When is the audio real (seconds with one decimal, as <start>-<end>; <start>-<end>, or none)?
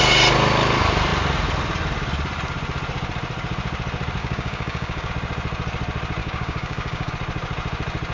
0.0-4.2; 5.1-6.2; 7.1-8.1